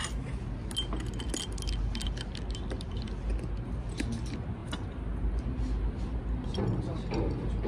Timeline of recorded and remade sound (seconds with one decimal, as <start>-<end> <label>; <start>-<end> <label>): 0.0-7.7 recorded